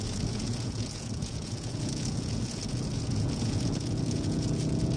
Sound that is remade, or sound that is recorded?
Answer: remade